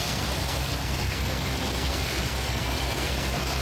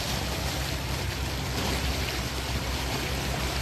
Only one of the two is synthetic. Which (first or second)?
first